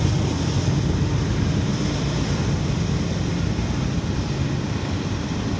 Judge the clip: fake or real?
real